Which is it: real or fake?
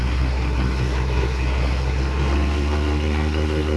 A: fake